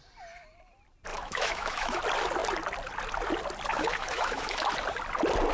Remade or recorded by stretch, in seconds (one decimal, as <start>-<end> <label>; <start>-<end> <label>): 0.0-1.1 recorded; 1.1-2.0 remade; 2.0-3.7 recorded; 3.7-4.7 remade; 4.7-5.5 recorded